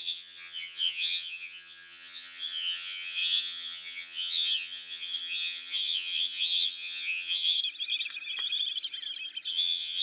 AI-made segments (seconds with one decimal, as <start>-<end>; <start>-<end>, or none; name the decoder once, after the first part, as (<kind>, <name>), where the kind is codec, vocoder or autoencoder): 0.0-7.6 (vocoder, HiFi-GAN); 9.5-10.0